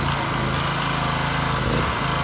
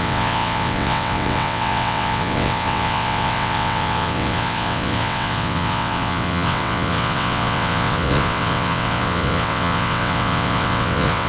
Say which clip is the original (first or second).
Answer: first